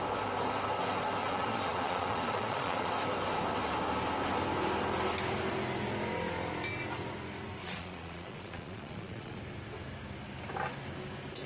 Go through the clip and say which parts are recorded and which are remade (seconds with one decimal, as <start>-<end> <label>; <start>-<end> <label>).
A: 0.0-1.2 recorded; 1.2-2.9 remade; 2.9-7.6 recorded; 7.6-9.4 remade; 9.4-11.5 recorded